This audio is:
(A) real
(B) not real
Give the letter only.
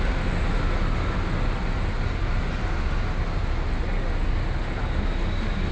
A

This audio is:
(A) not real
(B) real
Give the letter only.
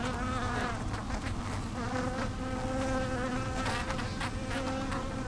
B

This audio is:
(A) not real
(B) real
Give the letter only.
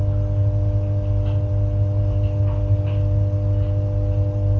B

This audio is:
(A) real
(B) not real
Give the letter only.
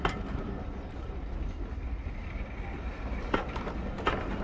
A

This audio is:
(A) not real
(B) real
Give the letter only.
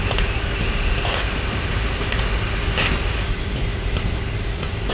B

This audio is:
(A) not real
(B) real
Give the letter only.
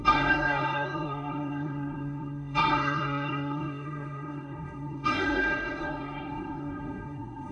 A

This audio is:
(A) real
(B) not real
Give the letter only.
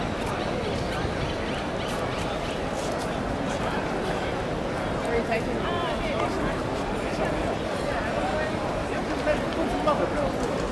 B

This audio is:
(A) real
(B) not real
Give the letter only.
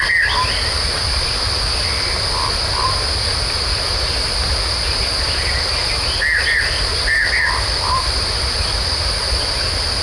A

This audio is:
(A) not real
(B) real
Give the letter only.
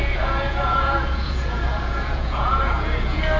A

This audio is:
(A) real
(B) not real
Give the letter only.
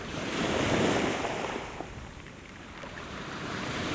B